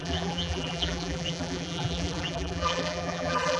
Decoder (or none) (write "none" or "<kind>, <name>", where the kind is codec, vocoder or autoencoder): vocoder, BigVGAN v2